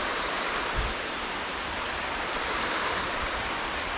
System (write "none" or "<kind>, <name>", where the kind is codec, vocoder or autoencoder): vocoder, BigVGAN v2